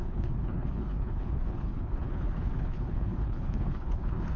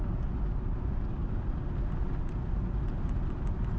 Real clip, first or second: second